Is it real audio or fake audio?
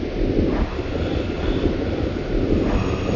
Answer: real